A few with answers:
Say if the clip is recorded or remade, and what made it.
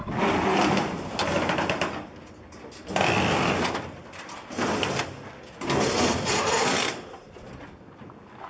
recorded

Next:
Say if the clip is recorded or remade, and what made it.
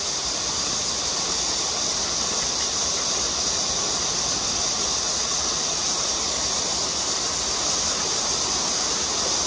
recorded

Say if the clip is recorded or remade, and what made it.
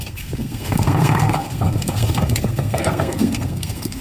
remade, codec, SNAC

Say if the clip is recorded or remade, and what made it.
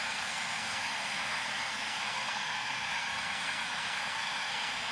remade, codec, SNAC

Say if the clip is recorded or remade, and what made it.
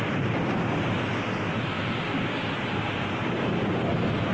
recorded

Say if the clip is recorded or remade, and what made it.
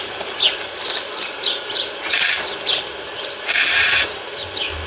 remade, vocoder, BigVGAN v2